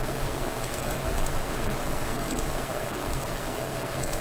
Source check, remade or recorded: remade